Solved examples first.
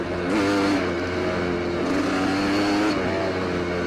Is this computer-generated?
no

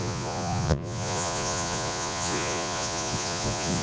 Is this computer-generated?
yes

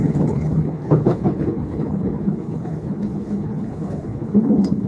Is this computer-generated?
yes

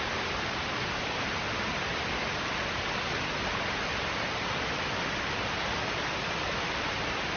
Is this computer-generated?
no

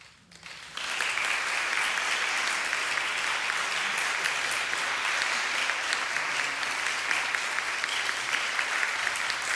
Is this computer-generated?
no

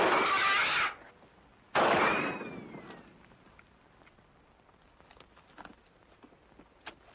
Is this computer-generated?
no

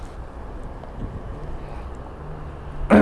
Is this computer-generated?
no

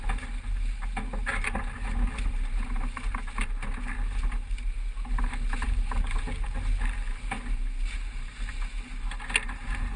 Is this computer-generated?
no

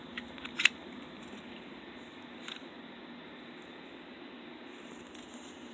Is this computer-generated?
no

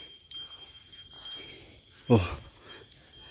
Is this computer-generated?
no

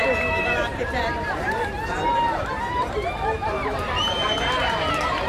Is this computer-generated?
yes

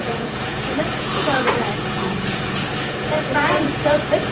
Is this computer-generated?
yes